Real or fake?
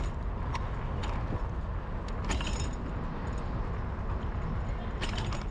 real